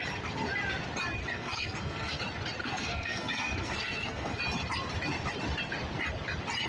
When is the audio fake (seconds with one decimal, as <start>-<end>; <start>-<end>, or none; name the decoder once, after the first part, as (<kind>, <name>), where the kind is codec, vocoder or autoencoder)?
1.2-2.2 (codec, SNAC); 2.6-4.4